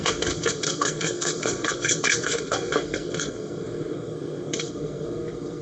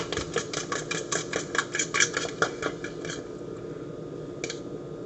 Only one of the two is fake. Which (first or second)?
first